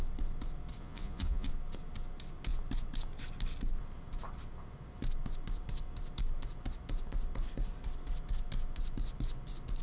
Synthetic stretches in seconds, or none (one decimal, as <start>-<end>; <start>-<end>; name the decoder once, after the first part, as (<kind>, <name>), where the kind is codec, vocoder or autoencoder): 0.8-1.5 (vocoder, Vocos)